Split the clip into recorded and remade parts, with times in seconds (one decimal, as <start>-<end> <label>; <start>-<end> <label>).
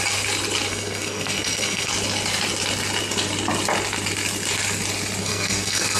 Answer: 0.0-0.7 recorded; 0.7-1.9 remade; 1.9-5.2 recorded; 5.2-6.0 remade